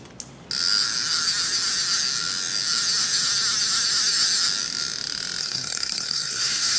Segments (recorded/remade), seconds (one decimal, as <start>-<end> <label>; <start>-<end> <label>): 0.0-5.4 recorded; 5.4-6.8 remade